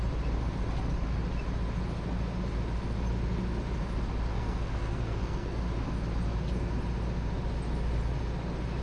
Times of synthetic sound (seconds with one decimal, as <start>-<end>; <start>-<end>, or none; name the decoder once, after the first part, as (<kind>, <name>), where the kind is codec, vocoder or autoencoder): 4.3-5.6 (codec, SNAC)